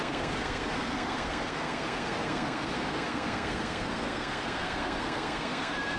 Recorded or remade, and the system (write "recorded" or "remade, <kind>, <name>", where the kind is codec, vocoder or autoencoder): remade, codec, SNAC